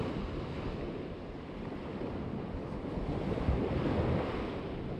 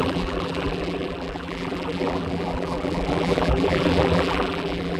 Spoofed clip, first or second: second